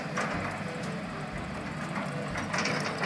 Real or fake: real